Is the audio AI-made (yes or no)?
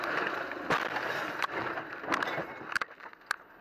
no